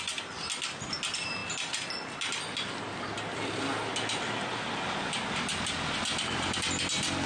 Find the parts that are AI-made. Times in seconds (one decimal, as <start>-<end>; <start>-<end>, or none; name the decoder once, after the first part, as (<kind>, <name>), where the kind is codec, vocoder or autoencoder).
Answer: none